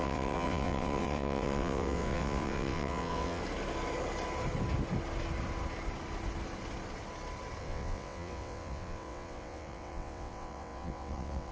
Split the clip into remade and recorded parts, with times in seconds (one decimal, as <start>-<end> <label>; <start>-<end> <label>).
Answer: 0.0-3.4 remade; 3.4-7.6 recorded; 7.6-11.5 remade